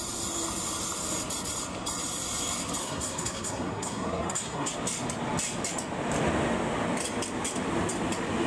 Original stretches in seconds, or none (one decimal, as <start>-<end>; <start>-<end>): 0.0-2.8; 4.7-8.5